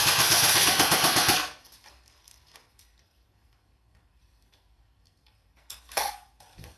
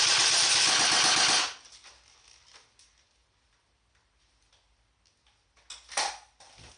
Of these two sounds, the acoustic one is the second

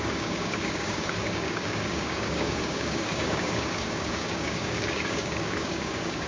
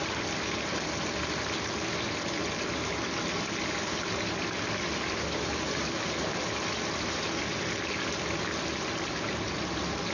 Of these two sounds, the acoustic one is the second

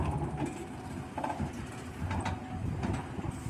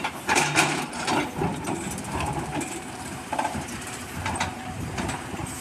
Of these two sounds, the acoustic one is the first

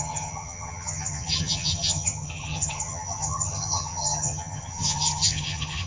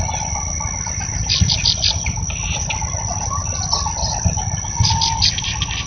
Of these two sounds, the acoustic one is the second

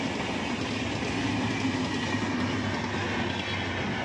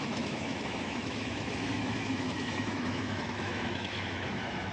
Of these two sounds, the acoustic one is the first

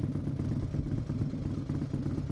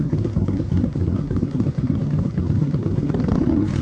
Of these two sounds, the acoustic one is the first